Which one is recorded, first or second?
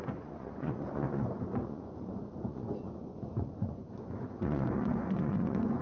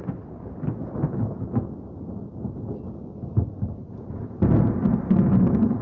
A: second